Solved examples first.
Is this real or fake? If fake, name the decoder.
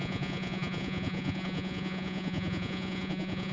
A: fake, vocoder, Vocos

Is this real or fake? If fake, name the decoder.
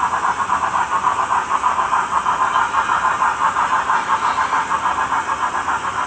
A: real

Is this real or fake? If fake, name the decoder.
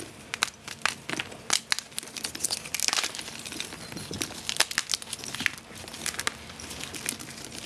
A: real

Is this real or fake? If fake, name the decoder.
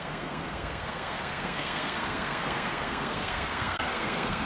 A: fake, codec, SNAC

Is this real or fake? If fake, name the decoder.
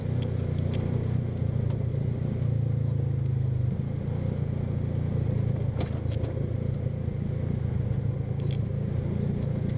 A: real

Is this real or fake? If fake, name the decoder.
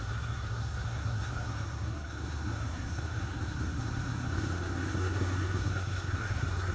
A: fake, codec, SNAC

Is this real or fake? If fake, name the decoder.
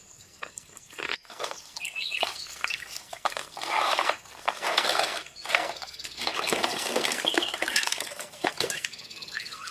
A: fake, codec, SNAC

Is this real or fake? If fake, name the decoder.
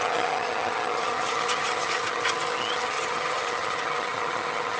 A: fake, vocoder, HiFi-GAN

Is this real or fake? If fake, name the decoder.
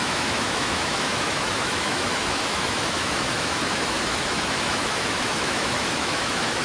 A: fake, autoencoder, DAC-VAE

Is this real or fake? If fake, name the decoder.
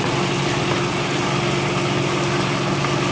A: real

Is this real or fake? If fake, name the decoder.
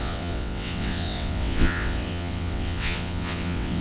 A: fake, vocoder, WaveNeXt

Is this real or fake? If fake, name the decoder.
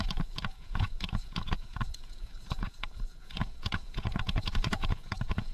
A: fake, vocoder, Vocos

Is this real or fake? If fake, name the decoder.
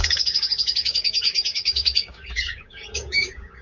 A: fake, codec, DAC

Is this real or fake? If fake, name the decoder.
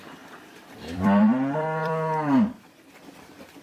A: fake, vocoder, BigVGAN v2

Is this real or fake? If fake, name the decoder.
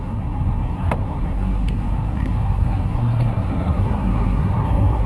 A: fake, codec, SNAC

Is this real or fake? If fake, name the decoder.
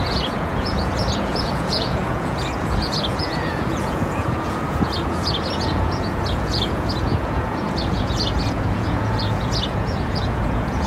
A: fake, vocoder, Vocos